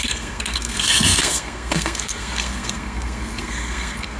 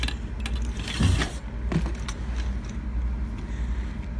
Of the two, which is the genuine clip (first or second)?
second